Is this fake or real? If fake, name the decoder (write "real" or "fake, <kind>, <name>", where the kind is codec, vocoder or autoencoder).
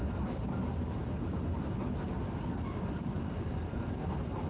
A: real